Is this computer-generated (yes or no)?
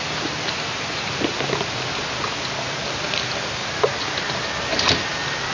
no